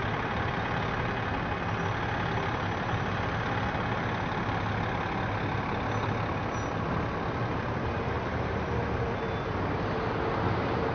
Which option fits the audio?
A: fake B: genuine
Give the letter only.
B